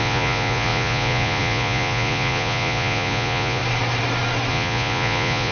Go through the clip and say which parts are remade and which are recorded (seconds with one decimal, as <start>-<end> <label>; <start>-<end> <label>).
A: 0.0-3.6 remade; 3.6-4.5 recorded; 4.5-5.5 remade